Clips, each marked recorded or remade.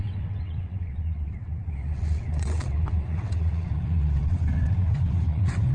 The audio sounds remade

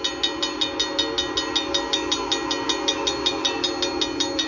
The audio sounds recorded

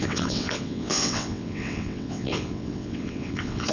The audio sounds remade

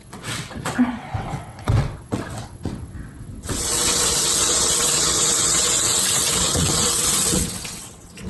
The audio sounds remade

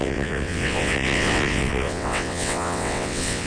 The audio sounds remade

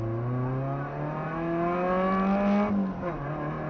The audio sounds recorded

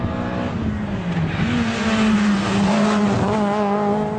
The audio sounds recorded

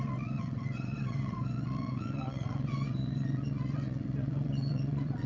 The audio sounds remade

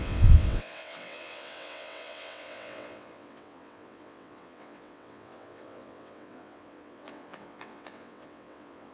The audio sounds remade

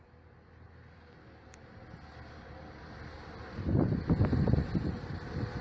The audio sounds recorded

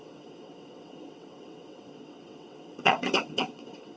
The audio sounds remade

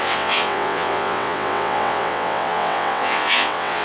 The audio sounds remade